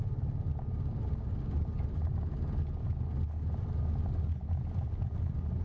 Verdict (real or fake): real